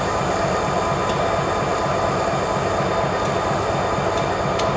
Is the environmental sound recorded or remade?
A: recorded